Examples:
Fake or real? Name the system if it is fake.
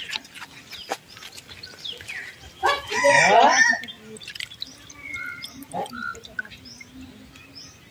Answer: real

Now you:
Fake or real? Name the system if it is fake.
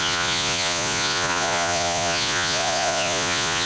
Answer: fake, vocoder, Vocos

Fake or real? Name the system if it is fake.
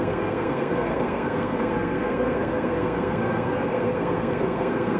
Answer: fake, codec, SNAC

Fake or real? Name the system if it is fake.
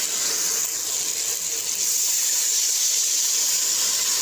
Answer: real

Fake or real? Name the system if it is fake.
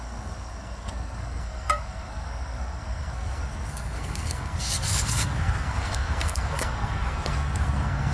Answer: fake, codec, SNAC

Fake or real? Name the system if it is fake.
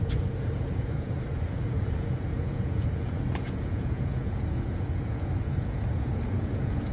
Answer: fake, vocoder, Vocos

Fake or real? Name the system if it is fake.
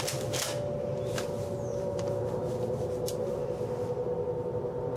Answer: real